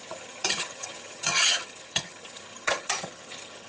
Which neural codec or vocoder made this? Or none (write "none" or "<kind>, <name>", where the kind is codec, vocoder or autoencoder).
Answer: vocoder, HiFi-GAN